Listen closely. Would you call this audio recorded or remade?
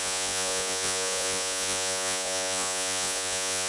remade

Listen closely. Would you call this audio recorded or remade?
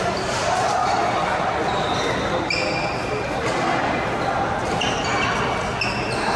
recorded